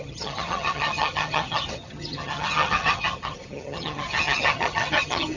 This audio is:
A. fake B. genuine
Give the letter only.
A